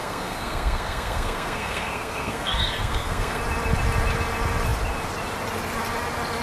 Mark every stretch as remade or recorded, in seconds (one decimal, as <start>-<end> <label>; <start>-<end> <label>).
0.0-3.4 remade; 3.4-6.4 recorded

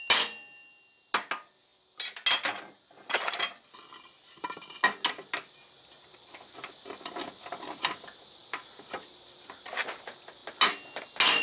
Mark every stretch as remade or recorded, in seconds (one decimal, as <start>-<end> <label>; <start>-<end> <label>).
0.0-11.4 recorded